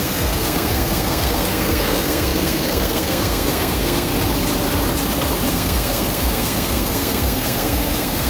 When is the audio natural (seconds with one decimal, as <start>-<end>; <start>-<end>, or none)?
4.1-5.5